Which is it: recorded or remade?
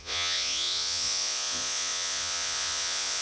remade